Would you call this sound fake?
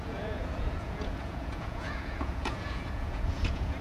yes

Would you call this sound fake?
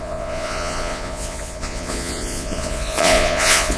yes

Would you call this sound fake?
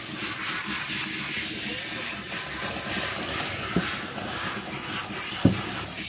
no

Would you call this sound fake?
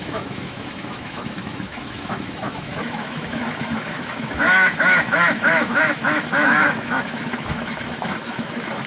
yes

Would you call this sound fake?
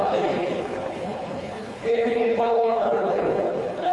yes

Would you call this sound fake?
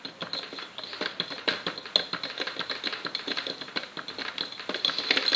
no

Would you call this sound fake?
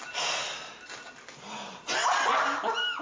no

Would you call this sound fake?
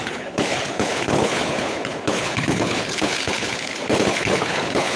yes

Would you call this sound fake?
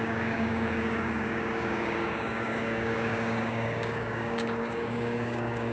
yes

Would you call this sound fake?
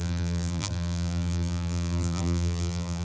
yes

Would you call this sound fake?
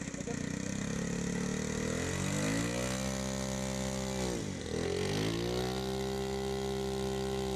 no